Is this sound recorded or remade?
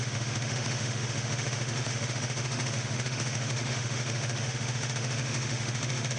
remade